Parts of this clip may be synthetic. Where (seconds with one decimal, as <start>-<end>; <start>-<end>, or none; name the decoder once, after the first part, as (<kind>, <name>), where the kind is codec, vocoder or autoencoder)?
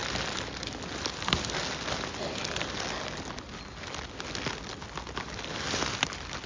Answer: none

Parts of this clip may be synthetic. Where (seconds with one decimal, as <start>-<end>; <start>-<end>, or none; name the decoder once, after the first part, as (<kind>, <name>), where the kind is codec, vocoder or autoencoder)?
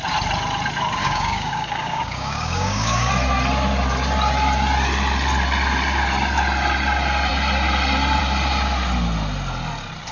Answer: 1.0-3.1 (codec, DAC)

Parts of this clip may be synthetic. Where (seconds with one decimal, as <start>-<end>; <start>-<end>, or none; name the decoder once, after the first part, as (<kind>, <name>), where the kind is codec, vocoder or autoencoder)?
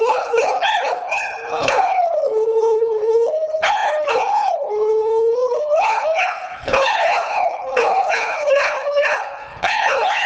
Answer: 0.0-10.3 (codec, HILCodec)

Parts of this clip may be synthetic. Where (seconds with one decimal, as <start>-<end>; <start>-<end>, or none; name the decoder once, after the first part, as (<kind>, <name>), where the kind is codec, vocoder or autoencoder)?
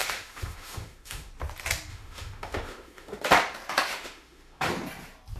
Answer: 0.0-1.3 (autoencoder, DAC-VAE); 1.9-3.2; 3.9-4.7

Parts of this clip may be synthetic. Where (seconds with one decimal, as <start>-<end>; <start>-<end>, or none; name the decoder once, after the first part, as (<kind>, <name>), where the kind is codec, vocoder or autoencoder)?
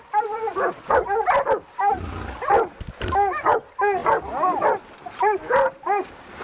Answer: none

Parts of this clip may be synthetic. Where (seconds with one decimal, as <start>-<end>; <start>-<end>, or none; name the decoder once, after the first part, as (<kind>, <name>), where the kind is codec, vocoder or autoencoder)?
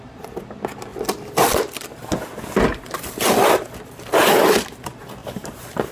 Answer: 5.2-5.9 (vocoder, BigVGAN v2)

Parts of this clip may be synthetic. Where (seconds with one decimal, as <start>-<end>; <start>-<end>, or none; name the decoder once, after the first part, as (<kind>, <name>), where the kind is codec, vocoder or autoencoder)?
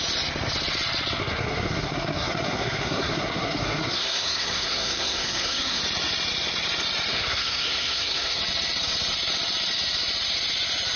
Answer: 1.2-5.8 (codec, SNAC); 7.1-8.4